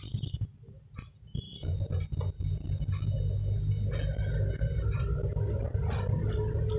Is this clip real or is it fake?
real